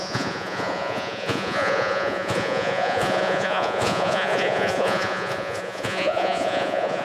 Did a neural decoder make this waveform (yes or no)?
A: yes